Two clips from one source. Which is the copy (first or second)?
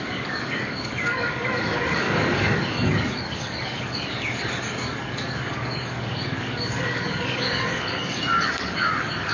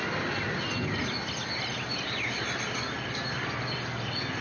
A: first